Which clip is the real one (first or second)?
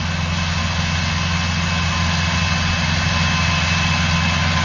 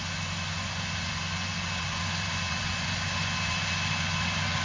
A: first